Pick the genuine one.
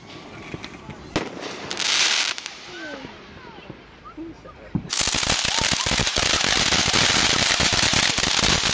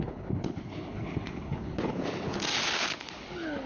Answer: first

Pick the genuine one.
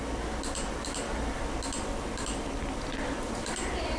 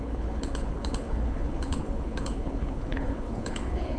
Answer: first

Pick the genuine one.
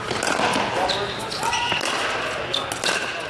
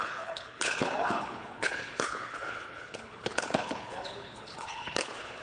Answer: first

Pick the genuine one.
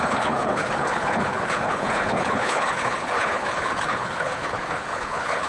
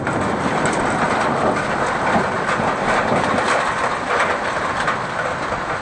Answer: second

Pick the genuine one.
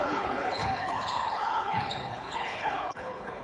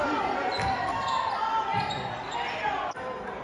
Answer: second